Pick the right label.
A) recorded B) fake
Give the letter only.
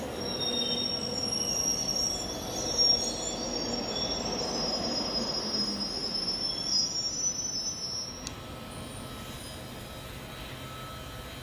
A